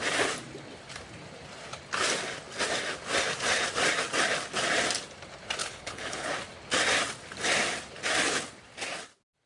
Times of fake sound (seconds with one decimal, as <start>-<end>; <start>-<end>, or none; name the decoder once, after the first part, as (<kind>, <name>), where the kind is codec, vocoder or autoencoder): 5.6-6.3 (codec, HILCodec)